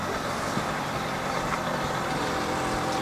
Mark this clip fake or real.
real